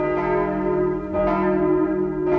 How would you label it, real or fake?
real